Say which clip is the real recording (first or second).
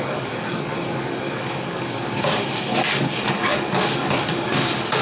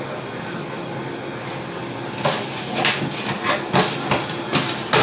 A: second